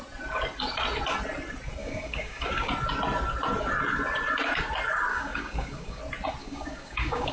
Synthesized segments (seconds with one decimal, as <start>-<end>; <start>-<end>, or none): 1.8-2.7; 5.1-6.0; 6.4-7.3